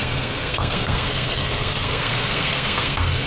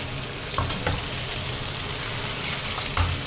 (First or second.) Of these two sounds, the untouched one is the second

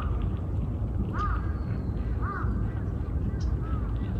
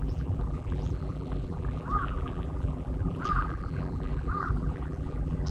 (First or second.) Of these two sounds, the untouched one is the first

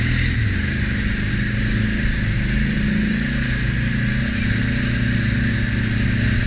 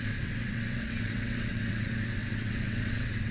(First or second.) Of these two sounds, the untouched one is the first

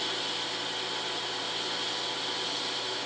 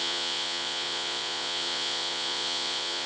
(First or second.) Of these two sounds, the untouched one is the first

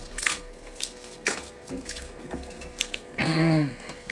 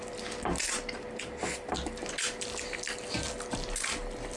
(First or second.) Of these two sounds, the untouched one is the second